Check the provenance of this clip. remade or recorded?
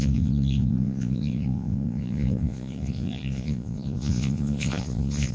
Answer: remade